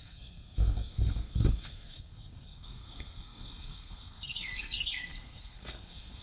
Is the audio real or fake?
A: fake